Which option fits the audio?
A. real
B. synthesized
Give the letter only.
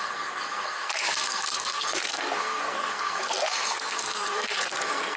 B